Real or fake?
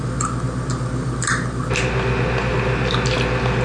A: real